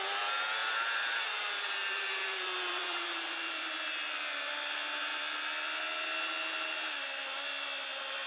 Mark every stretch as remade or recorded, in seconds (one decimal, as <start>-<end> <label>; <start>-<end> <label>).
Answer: 0.0-0.6 recorded; 0.6-4.5 remade; 4.5-8.3 recorded